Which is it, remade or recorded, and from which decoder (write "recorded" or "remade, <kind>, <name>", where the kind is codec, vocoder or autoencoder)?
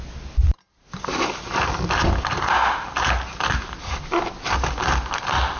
recorded